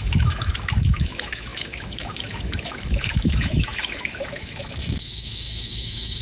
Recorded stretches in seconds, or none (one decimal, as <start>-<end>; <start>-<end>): none